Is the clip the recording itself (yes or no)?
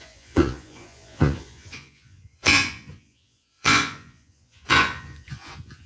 no